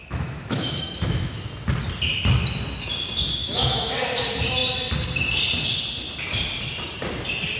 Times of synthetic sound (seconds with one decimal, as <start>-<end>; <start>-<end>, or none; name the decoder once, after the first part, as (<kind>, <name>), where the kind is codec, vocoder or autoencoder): 0.0-1.5 (autoencoder, DAC-VAE); 3.4-3.9